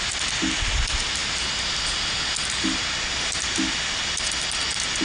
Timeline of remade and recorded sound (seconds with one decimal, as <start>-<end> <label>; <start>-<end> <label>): 0.0-5.0 recorded